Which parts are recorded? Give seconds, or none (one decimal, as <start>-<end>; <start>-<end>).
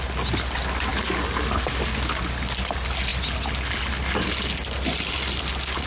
0.0-5.9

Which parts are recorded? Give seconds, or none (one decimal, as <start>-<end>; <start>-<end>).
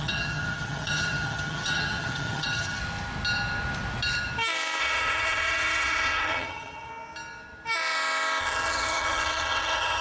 2.8-4.8; 6.9-8.4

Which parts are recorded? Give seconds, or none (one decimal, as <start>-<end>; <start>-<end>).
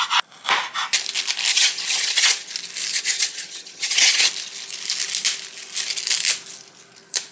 0.0-1.5; 2.5-2.9; 4.3-7.3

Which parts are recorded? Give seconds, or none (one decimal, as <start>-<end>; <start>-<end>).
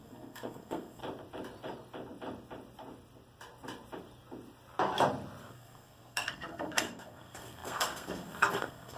1.0-5.4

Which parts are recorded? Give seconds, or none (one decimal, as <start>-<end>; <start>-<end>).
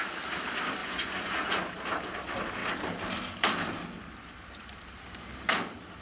0.0-0.8; 1.7-6.0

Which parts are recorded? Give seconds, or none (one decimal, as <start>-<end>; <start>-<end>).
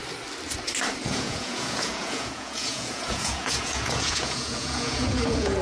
0.0-1.0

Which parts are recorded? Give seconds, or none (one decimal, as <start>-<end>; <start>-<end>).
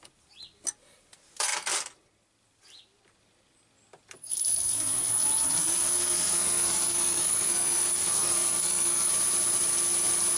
0.0-4.2; 5.1-5.6; 9.1-10.4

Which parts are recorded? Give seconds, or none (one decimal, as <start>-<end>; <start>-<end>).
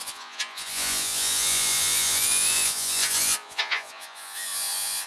none